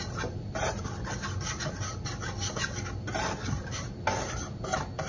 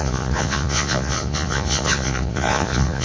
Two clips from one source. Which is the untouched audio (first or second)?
first